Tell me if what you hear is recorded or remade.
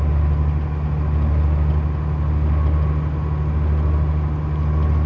recorded